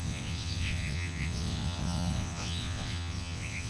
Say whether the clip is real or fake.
fake